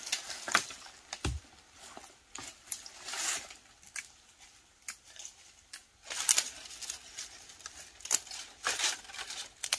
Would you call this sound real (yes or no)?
yes